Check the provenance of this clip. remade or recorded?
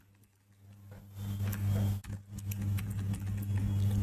recorded